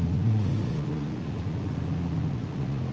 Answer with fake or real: fake